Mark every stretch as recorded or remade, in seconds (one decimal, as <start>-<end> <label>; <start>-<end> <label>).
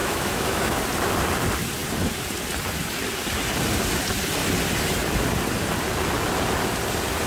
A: 0.0-0.8 remade; 0.8-7.3 recorded